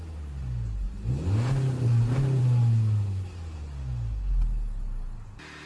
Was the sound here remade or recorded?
recorded